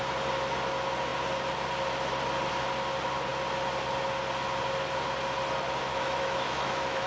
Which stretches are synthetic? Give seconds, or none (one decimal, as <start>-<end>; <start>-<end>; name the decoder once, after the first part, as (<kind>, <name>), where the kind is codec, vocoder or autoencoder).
5.9-7.1 (autoencoder, DAC-VAE)